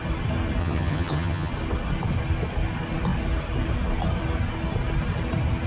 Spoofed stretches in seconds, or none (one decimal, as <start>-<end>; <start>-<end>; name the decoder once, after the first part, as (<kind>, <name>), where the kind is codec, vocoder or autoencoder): 0.6-1.5 (vocoder, HiFi-GAN)